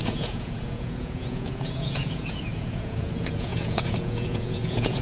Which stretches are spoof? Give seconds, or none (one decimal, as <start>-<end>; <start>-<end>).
0.0-5.0